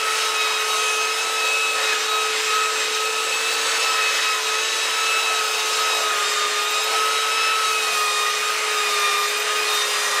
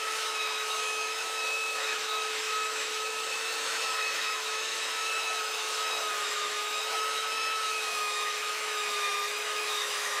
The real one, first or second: first